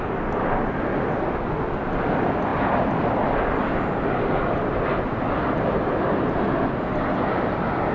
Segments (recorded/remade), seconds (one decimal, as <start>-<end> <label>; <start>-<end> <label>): 0.0-7.9 recorded